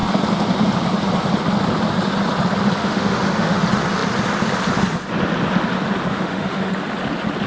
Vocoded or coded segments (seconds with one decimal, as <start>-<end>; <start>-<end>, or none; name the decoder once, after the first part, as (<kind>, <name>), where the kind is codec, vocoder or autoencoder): 2.8-3.6 (autoencoder, DAC-VAE); 6.1-6.7